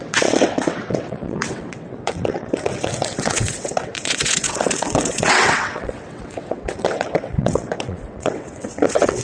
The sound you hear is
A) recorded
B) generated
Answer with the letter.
B